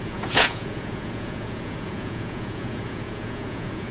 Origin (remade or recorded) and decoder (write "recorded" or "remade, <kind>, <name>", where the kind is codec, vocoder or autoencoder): remade, vocoder, Vocos